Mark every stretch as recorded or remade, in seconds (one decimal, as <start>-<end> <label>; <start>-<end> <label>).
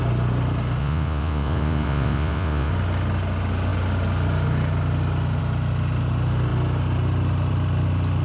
0.0-0.8 recorded; 0.8-2.7 remade; 2.7-8.2 recorded